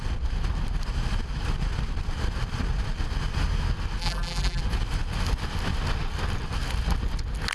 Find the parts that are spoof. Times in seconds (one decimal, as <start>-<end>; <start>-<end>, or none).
4.0-4.6

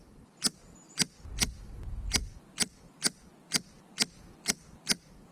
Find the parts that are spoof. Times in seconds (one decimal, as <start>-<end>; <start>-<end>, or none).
none

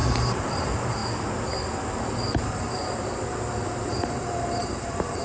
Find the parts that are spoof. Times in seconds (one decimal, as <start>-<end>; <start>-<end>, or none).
0.0-1.0; 2.4-2.8; 3.9-5.2

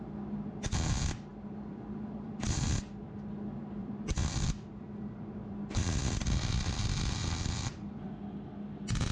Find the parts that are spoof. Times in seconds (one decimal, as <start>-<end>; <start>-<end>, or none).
1.3-2.4; 3.8-8.1